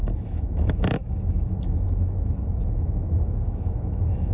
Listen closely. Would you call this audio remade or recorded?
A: remade